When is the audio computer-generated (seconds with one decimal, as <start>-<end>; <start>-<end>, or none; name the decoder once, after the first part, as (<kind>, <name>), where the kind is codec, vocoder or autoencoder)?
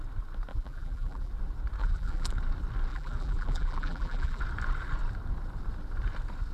0.5-1.3 (vocoder, BigVGAN v2); 1.8-2.3; 2.9-4.4